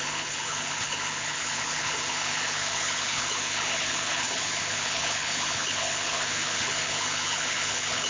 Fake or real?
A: fake